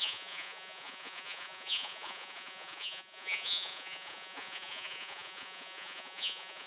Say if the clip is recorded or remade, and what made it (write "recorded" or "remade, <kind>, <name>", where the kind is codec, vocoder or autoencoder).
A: remade, vocoder, Vocos